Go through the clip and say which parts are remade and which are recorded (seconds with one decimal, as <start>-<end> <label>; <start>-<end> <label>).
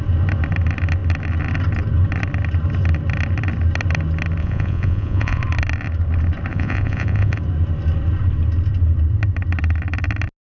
0.0-4.4 recorded; 4.4-5.4 remade; 5.4-6.5 recorded; 6.5-7.4 remade; 7.4-10.6 recorded